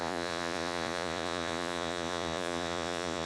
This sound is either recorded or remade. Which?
remade